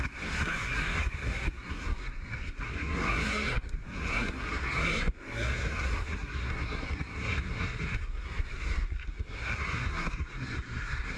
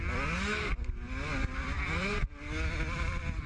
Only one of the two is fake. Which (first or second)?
first